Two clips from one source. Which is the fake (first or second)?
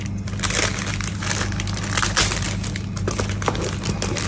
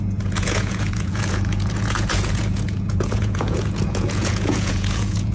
second